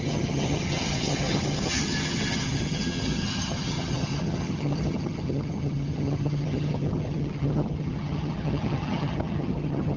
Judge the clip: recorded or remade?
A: remade